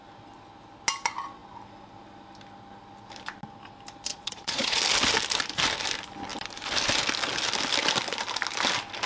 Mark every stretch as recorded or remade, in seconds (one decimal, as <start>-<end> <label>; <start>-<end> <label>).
0.0-4.1 recorded; 4.1-4.8 remade; 4.8-9.1 recorded